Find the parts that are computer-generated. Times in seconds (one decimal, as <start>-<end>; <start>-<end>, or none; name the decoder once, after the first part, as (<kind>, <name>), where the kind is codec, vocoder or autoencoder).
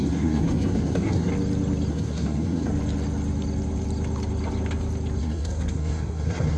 0.0-1.3 (codec, SNAC); 1.9-2.7; 5.2-6.6